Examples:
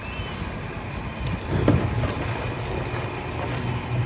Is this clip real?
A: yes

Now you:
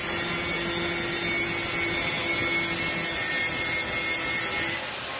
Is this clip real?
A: yes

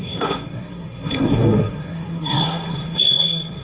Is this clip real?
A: no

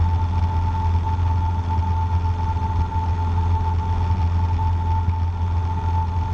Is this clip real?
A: yes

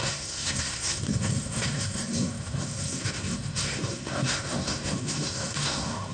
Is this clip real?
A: no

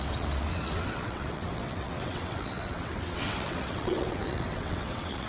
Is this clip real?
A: no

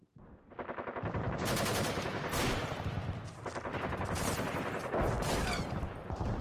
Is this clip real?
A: yes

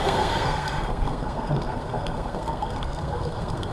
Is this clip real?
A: no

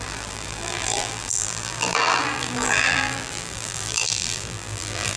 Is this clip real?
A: no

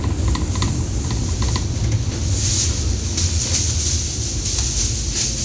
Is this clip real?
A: yes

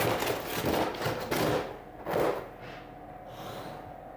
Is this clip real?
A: yes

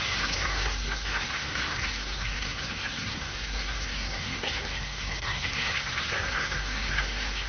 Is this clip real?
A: no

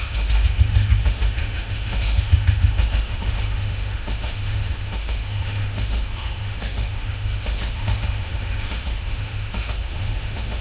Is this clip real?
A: no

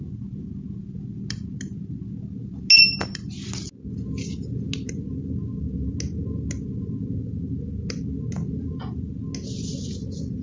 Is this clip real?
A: yes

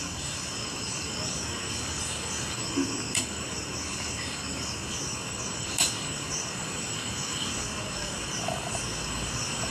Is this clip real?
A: no